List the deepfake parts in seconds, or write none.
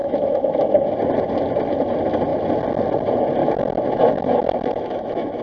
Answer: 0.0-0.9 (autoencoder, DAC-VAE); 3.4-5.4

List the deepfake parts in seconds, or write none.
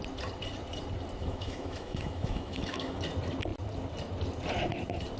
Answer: 1.2-3.0 (autoencoder, DAC-VAE)